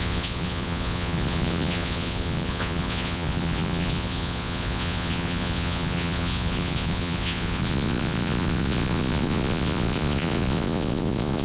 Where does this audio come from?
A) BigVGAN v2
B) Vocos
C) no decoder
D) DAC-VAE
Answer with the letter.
B